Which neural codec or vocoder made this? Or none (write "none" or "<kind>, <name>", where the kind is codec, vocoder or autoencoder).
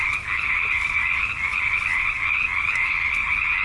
vocoder, BigVGAN v2